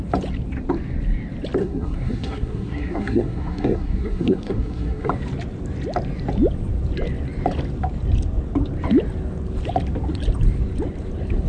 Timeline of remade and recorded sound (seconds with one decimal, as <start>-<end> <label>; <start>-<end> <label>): 0.0-1.6 recorded; 1.6-5.1 remade; 5.1-11.5 recorded

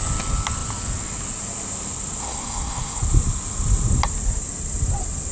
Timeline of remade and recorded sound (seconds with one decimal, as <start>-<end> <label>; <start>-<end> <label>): 0.0-2.2 recorded; 2.2-3.0 remade; 3.0-5.3 recorded

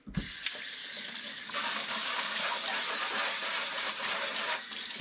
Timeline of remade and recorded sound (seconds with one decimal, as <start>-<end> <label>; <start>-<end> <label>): 0.0-0.8 recorded; 0.8-2.4 remade; 2.4-5.0 recorded